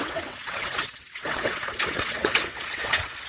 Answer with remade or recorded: remade